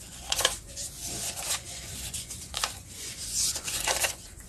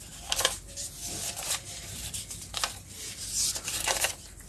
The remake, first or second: first